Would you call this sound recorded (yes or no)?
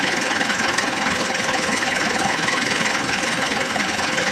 no